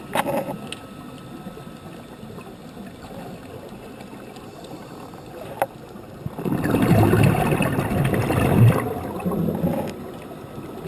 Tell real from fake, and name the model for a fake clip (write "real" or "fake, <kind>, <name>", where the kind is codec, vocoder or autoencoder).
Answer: real